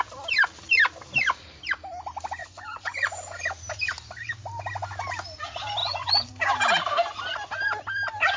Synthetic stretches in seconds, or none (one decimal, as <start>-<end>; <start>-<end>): 2.4-3.4; 5.8-6.3